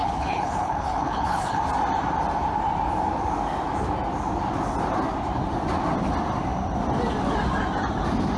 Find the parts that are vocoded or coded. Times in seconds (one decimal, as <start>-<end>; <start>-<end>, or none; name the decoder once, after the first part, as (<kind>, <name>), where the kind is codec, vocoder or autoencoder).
0.0-1.6 (codec, HILCodec)